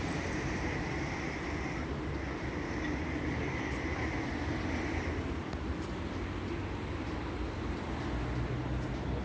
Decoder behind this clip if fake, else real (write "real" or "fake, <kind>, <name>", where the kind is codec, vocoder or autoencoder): real